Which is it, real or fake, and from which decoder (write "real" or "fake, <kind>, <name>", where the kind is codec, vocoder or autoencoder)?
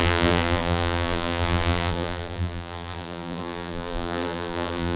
fake, vocoder, BigVGAN v2